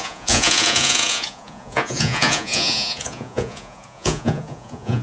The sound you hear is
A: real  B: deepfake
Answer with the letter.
B